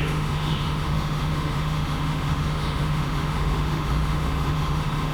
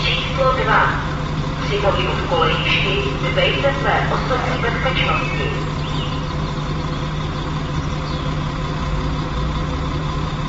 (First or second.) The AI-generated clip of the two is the first